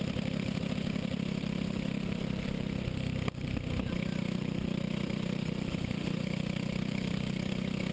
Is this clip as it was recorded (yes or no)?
no